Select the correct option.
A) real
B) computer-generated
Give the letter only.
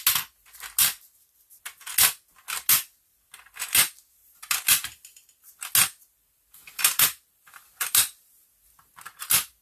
A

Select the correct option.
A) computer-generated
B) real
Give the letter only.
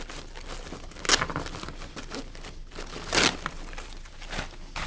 B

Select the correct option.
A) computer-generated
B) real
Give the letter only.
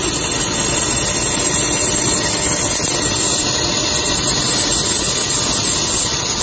B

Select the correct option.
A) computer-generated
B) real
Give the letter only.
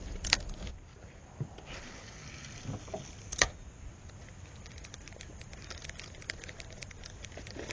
B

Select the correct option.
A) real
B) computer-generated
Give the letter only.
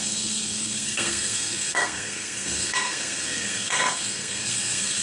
B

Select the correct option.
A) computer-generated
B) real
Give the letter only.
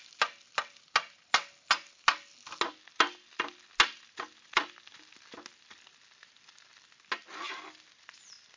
B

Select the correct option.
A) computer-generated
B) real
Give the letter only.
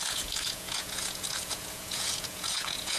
A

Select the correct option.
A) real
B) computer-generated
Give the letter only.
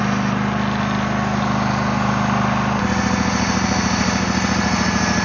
A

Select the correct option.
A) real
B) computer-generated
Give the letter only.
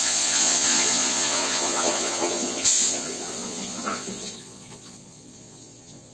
B